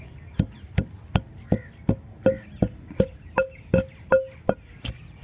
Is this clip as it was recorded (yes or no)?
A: yes